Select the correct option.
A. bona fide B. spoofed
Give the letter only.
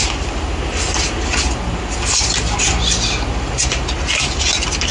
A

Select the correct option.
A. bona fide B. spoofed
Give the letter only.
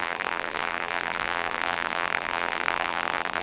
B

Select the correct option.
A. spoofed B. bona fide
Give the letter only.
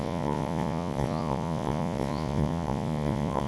A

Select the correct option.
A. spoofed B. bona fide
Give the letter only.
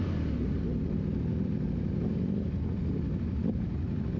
B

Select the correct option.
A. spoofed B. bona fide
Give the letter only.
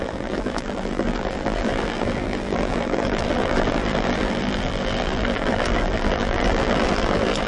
A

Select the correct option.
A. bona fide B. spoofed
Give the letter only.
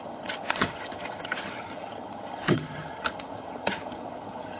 B